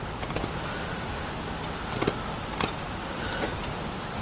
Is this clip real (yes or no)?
yes